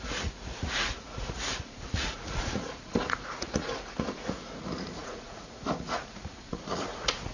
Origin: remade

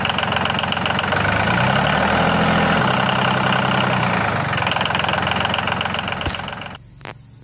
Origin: recorded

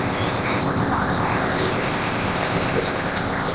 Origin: remade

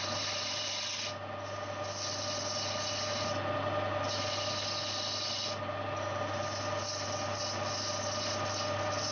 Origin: recorded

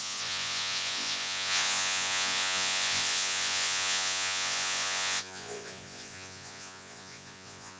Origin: remade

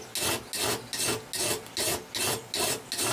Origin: recorded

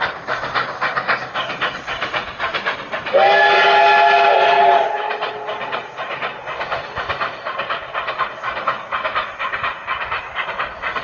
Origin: recorded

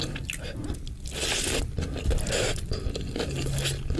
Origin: recorded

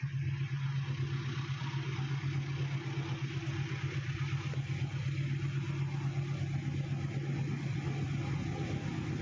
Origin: recorded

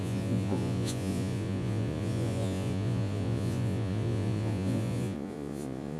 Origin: remade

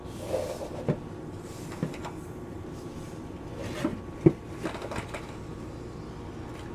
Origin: recorded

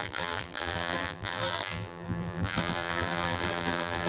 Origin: remade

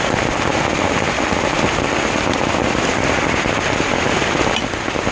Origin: recorded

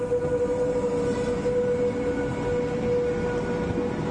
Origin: recorded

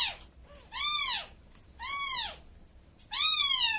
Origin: recorded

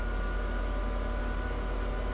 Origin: recorded